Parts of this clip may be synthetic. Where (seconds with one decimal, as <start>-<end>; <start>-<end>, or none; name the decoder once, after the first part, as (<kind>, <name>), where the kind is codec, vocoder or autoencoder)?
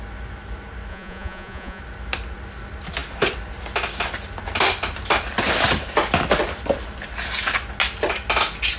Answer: 0.9-1.8 (vocoder, Vocos)